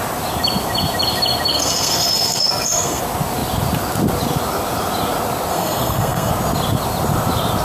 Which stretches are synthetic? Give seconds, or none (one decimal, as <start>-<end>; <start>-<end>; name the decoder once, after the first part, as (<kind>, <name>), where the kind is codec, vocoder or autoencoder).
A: 1.5-3.0 (codec, SNAC); 5.5-6.3